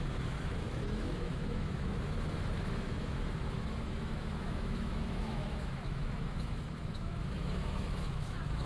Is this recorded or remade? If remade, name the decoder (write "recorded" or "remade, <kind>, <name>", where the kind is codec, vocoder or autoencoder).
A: remade, autoencoder, DAC-VAE